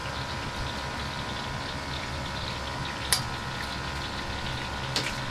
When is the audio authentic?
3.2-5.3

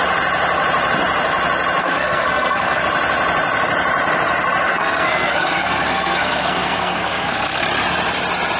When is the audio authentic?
0.0-1.8; 2.8-4.7; 7.6-8.6

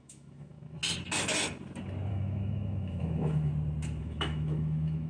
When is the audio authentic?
0.8-2.1; 3.5-4.0

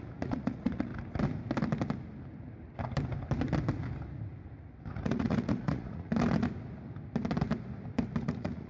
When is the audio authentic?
0.9-4.9; 6.1-8.2

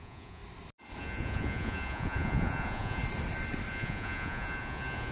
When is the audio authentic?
0.4-1.0; 3.0-3.7